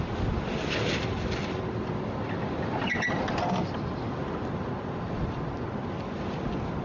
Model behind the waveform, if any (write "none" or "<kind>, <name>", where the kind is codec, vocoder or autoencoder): none